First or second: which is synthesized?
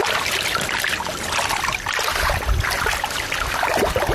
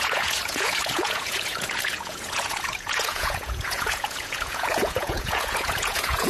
second